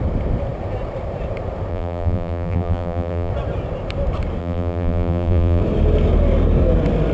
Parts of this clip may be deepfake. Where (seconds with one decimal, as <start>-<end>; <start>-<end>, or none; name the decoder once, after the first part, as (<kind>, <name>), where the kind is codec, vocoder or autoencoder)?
1.7-3.3 (vocoder, BigVGAN v2); 4.4-5.6